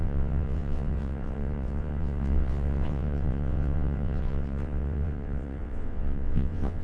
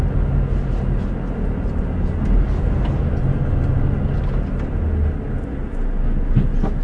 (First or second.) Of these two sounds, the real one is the second